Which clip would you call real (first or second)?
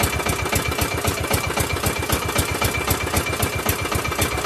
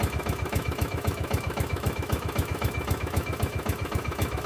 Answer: first